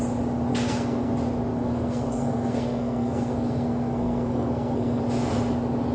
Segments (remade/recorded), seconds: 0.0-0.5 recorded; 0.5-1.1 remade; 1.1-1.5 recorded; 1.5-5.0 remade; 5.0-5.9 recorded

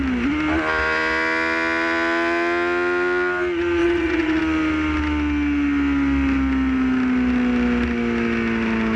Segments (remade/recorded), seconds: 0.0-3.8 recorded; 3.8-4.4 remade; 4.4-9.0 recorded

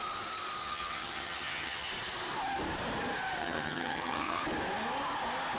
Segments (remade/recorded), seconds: 0.0-0.6 recorded; 0.6-1.9 remade; 1.9-3.4 recorded; 3.4-4.4 remade; 4.4-5.6 recorded